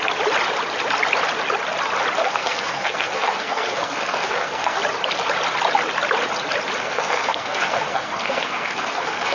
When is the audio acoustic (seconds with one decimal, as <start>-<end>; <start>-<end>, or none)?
0.0-2.2; 4.8-6.8

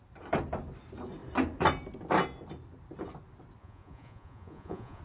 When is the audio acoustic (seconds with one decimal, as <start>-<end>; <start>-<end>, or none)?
0.0-3.6

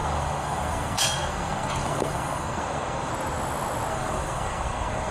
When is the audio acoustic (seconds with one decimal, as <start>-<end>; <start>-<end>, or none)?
3.1-3.9